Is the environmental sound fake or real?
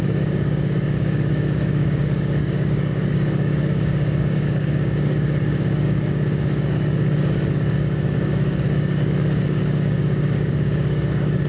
fake